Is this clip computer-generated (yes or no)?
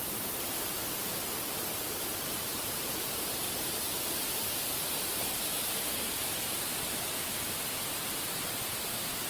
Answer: yes